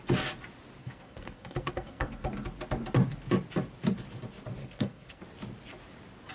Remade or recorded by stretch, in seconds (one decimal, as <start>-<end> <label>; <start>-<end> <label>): 0.0-0.8 recorded; 0.8-2.3 remade; 2.3-4.6 recorded; 4.6-5.2 remade; 5.2-6.3 recorded